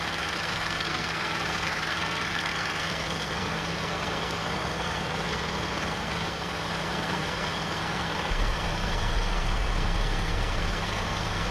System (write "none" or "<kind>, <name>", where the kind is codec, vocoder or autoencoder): codec, SNAC